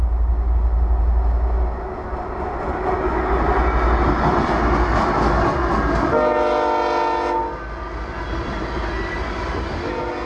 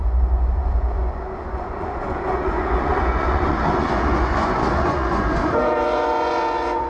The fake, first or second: second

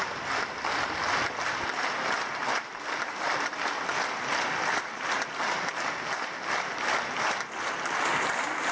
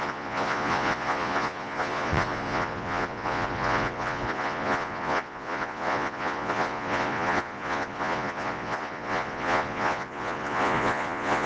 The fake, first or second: second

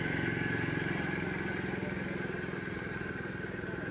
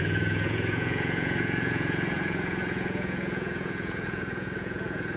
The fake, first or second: second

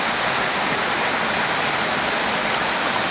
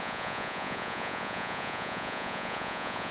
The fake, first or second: second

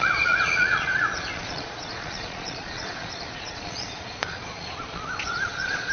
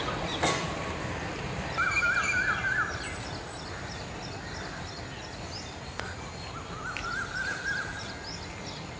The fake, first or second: first